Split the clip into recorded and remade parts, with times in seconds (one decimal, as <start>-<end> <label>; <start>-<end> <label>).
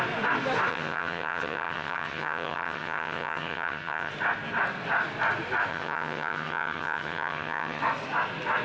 0.0-0.7 recorded; 0.7-4.1 remade; 4.1-5.7 recorded; 5.7-7.8 remade; 7.8-8.6 recorded